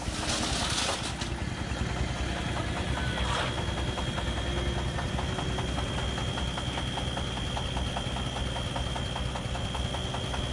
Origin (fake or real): real